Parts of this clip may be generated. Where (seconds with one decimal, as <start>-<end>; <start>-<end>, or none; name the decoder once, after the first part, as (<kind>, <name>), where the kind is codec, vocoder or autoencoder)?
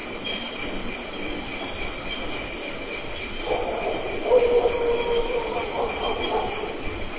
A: none